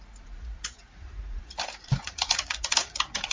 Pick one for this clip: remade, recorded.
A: remade